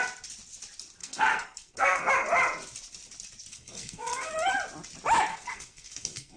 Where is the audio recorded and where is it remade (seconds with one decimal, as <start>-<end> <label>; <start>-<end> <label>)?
0.0-1.0 recorded; 1.0-2.1 remade; 2.1-3.5 recorded; 3.5-4.3 remade; 4.3-5.3 recorded; 5.3-6.4 remade